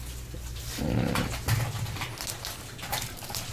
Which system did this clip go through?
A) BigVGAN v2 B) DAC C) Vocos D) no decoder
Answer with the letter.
D